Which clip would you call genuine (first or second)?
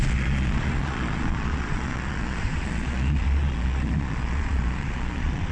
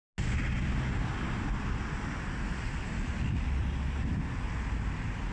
second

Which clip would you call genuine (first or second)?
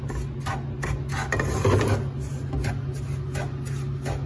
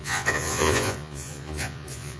first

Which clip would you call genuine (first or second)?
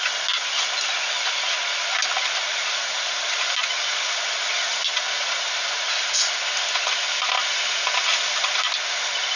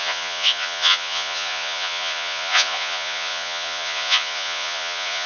first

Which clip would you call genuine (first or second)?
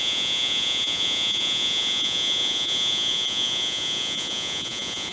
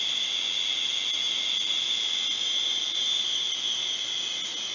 second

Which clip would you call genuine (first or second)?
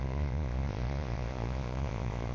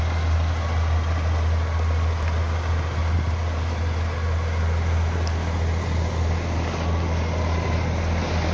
second